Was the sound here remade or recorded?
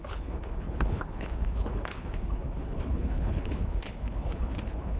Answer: remade